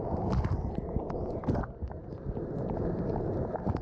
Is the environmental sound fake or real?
real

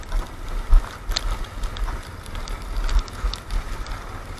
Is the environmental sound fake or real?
real